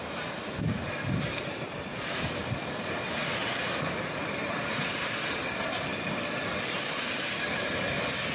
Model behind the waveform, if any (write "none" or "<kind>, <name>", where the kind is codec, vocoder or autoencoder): none